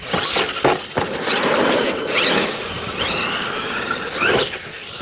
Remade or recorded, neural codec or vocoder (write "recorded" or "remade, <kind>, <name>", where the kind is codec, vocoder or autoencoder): recorded